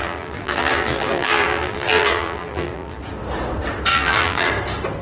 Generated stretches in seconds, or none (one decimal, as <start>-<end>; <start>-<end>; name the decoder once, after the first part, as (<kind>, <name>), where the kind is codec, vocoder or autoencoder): 0.0-3.0 (vocoder, BigVGAN v2); 3.9-4.5